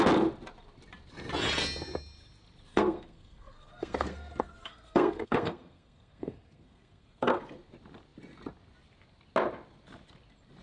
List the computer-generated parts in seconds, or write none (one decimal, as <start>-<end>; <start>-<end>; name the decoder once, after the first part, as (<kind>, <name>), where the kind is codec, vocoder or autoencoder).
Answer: 2.7-7.4 (codec, SNAC)